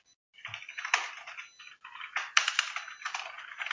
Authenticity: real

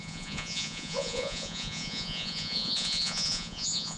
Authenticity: fake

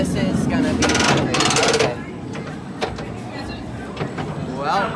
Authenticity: real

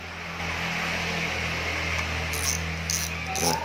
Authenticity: real